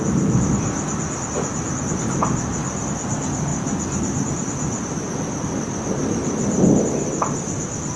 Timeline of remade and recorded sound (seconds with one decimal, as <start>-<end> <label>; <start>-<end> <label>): 0.0-8.0 recorded